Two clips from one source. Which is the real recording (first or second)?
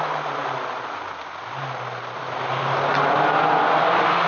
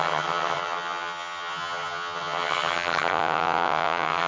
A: first